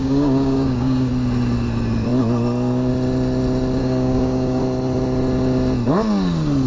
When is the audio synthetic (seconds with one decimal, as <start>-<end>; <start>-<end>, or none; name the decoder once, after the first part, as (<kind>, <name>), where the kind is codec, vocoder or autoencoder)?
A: 0.0-1.1 (codec, DAC); 3.8-4.6